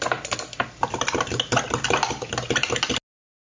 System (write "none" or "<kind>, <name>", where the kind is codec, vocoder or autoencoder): none